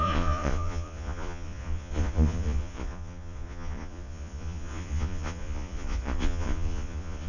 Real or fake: fake